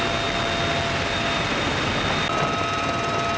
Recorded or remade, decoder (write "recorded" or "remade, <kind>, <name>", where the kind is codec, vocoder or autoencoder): recorded